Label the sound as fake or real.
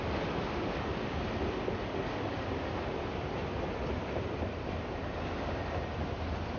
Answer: real